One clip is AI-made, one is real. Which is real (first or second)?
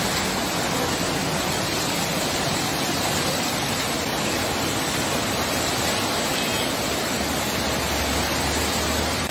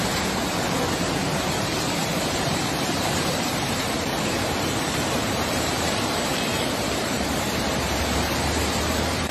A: first